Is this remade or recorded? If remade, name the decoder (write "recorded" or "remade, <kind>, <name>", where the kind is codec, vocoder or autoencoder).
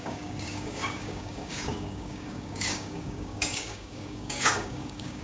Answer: remade, codec, DAC